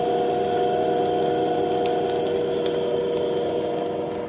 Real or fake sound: real